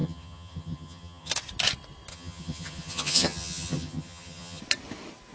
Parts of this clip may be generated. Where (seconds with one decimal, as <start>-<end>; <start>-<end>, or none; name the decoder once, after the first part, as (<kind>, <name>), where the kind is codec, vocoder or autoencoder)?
0.0-1.3 (vocoder, HiFi-GAN); 2.1-4.6